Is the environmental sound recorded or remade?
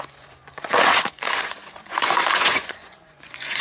remade